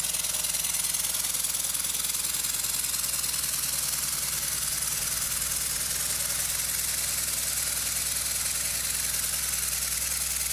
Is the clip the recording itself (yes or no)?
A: yes